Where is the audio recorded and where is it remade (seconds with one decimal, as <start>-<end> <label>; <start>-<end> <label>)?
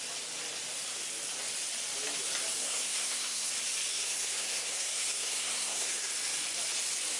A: 0.0-2.6 recorded; 2.6-3.5 remade; 3.5-3.9 recorded; 3.9-6.1 remade; 6.1-7.2 recorded